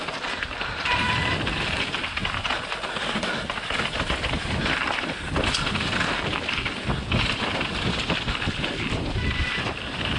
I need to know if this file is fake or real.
real